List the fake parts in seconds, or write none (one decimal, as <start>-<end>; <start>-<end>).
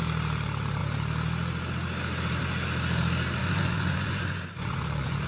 3.4-5.3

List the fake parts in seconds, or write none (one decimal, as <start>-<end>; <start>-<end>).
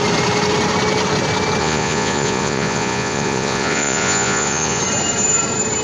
1.6-4.8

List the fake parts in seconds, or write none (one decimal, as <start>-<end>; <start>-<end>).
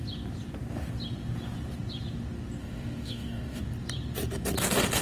2.6-3.6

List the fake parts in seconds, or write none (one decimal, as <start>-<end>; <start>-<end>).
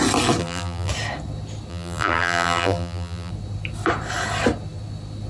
0.4-0.9; 1.7-3.3